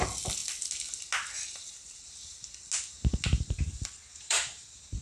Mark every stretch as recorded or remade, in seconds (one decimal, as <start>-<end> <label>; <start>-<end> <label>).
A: 0.0-4.1 recorded; 4.1-5.0 remade